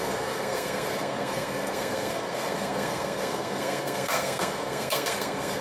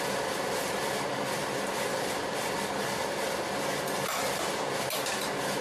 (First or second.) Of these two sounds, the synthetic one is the first